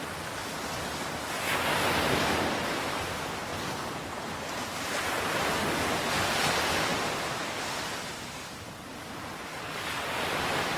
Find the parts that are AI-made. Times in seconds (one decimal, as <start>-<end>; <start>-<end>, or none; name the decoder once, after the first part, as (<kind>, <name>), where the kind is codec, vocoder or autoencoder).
none